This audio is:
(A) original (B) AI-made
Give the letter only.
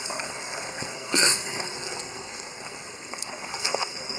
B